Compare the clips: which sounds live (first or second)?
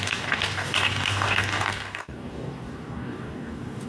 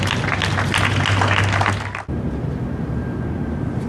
second